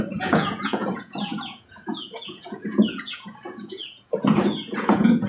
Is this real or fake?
fake